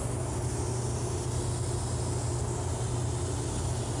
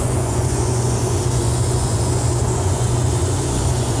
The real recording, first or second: first